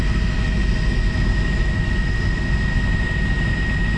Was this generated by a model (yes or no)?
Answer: no